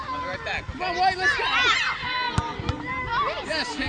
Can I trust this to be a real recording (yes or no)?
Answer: yes